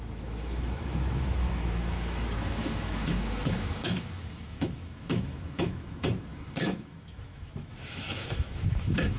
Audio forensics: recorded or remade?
remade